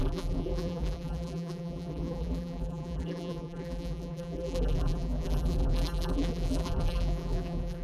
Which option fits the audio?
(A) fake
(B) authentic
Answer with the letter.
A